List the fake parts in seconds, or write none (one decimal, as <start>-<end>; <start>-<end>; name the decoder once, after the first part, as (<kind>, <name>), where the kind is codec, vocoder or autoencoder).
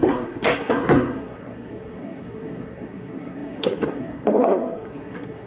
0.0-5.5 (codec, SNAC)